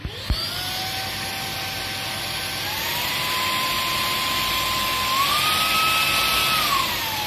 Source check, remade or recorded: recorded